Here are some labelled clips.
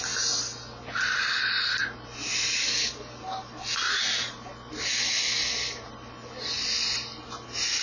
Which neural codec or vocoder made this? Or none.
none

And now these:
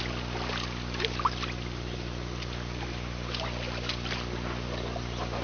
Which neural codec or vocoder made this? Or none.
none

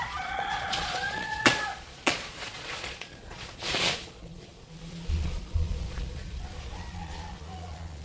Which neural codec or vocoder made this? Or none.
vocoder, Vocos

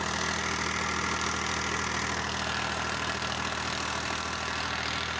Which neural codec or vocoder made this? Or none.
none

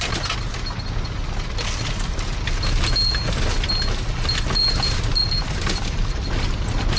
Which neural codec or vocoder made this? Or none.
none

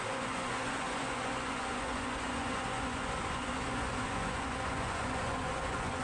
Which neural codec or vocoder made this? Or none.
vocoder, Vocos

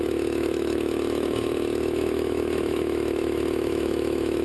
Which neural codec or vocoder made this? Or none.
autoencoder, DAC-VAE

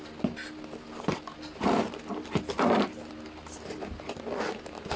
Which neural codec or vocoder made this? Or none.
none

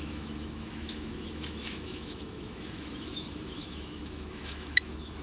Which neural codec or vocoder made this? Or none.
autoencoder, DAC-VAE